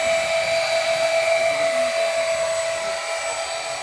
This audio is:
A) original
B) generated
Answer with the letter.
A